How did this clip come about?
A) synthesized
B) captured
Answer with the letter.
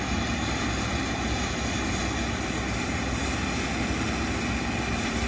B